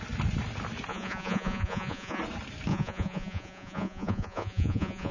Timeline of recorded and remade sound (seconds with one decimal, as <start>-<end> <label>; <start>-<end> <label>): 0.0-0.9 recorded; 0.9-2.2 remade; 2.2-2.7 recorded; 2.7-5.1 remade